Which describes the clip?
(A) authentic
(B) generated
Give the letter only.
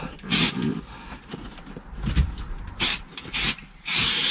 B